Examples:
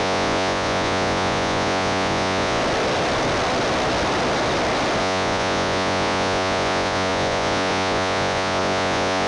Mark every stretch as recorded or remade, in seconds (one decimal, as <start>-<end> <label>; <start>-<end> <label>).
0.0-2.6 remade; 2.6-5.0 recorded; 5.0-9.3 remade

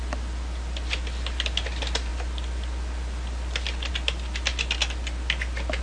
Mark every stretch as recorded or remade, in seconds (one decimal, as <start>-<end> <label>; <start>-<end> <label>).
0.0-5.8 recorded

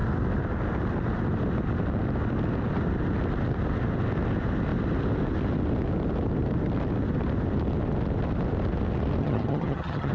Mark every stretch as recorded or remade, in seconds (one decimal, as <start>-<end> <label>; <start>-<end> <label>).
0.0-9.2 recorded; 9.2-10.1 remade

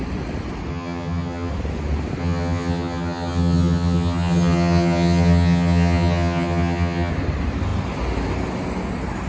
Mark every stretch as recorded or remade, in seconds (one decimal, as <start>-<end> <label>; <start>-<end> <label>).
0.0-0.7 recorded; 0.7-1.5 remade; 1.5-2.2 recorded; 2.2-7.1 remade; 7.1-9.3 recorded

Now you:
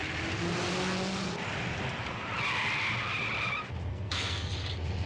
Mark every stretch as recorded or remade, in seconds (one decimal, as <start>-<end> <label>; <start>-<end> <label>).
0.0-3.9 recorded; 3.9-4.5 remade; 4.5-5.1 recorded

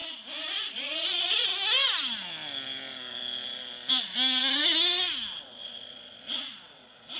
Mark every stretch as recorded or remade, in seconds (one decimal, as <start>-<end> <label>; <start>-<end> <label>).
0.0-0.7 recorded; 0.7-1.5 remade; 1.5-3.9 recorded; 3.9-4.6 remade; 4.6-5.3 recorded; 5.3-7.2 remade

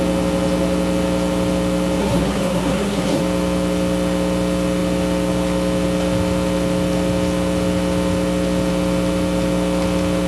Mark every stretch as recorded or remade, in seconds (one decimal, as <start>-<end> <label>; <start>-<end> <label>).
0.0-2.0 recorded; 2.0-3.2 remade; 3.2-10.3 recorded

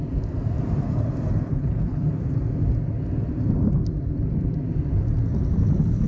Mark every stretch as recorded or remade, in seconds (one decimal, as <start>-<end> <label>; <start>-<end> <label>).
0.0-1.5 recorded; 1.5-2.1 remade; 2.1-6.1 recorded